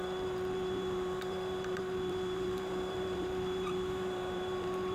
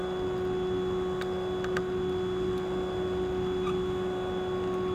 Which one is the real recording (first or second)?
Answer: second